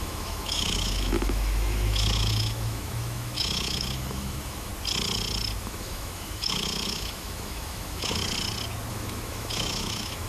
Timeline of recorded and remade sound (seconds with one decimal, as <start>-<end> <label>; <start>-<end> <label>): 0.0-4.7 remade; 4.7-5.6 recorded; 5.6-8.2 remade; 8.2-8.9 recorded; 8.9-10.3 remade